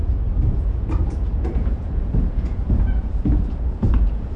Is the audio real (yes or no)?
no